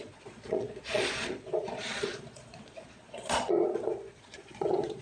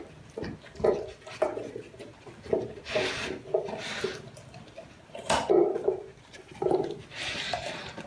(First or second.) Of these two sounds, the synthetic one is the first